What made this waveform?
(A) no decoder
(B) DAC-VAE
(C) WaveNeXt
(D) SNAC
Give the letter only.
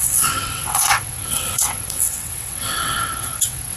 C